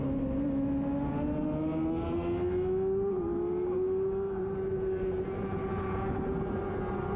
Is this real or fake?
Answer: real